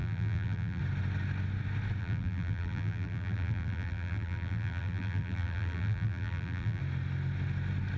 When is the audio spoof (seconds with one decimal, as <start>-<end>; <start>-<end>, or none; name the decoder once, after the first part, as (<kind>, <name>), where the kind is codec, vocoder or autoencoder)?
0.0-0.8 (vocoder, BigVGAN v2); 2.0-6.8